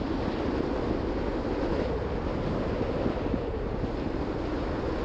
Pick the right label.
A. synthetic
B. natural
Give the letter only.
B